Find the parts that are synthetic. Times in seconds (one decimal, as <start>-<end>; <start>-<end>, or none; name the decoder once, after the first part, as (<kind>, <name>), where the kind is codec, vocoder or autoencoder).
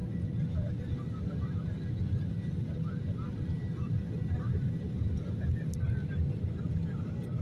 none